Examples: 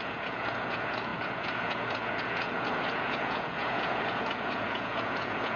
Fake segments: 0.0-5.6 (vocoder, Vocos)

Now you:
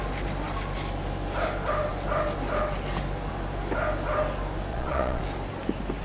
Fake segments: 4.7-5.2 (vocoder, Vocos)

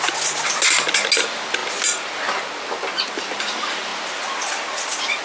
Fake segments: none

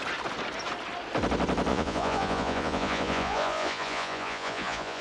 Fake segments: 1.7-5.0 (vocoder, Vocos)

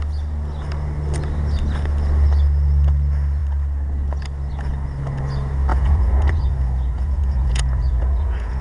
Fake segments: 5.7-8.6 (vocoder, Vocos)

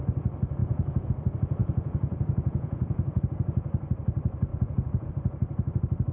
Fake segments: 0.6-1.1 (vocoder, Vocos); 1.6-3.2; 4.5-5.1

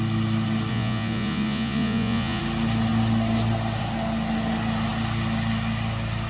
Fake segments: 0.7-2.4 (vocoder, Vocos)